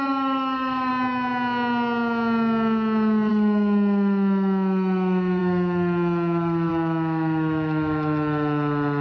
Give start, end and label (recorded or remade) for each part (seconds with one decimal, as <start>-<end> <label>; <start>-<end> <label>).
0.0-0.9 remade; 0.9-3.3 recorded; 3.3-9.0 remade